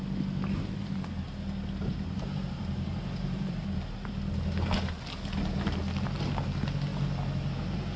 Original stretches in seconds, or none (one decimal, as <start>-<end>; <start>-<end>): 0.0-1.8; 3.6-8.0